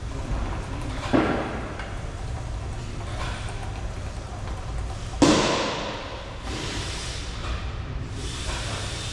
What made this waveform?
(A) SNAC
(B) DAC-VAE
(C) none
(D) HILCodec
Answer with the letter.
C